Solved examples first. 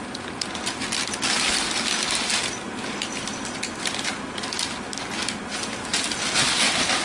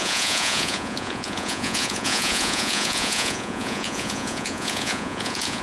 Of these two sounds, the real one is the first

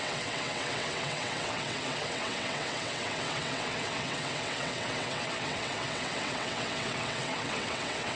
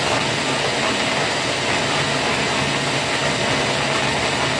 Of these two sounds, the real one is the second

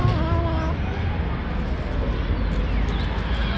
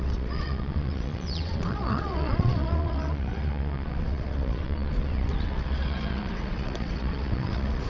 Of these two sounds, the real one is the first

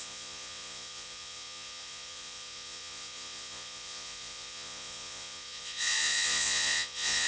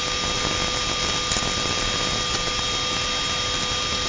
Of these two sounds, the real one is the second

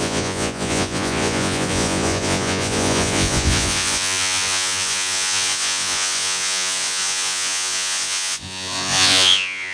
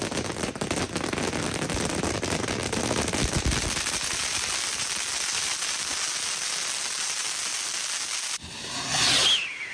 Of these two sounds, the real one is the second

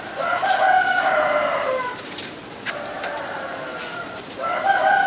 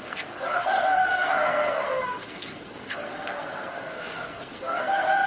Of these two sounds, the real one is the first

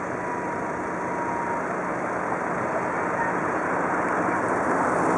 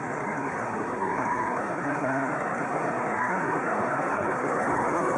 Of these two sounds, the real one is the first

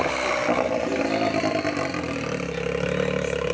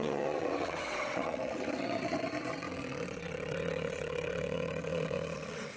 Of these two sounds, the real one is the first